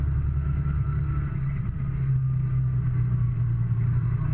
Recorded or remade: recorded